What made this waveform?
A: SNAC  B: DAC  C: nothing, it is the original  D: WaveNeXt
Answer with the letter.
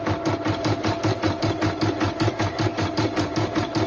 C